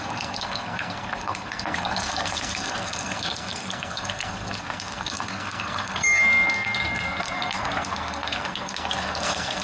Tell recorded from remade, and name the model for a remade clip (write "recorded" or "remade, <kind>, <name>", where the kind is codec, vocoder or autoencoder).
remade, codec, SNAC